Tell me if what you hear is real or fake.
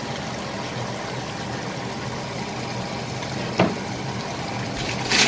real